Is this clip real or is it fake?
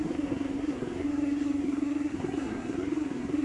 fake